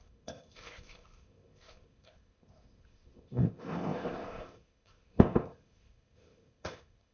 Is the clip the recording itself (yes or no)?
no